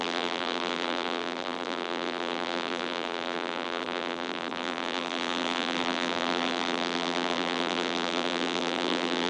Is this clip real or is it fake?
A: fake